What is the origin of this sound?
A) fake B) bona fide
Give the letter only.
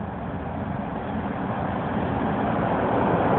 B